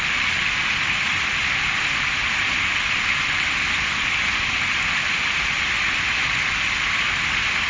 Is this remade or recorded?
recorded